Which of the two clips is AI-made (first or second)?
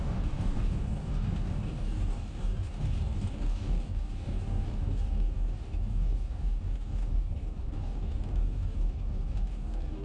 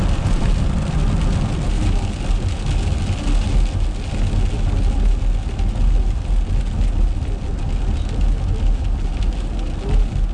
first